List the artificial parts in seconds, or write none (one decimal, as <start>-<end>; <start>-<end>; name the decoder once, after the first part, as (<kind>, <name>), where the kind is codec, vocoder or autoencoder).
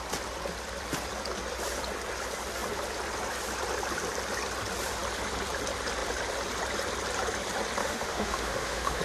7.8-9.0 (autoencoder, DAC-VAE)